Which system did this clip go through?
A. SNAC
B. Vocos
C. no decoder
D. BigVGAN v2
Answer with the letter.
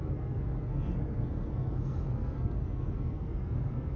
A